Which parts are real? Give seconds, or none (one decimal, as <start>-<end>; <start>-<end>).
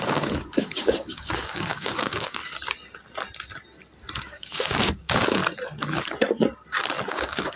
2.4-4.2; 5.4-7.1